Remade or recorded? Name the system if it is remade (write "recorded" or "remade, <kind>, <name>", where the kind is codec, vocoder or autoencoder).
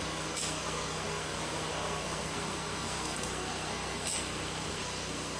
remade, codec, SNAC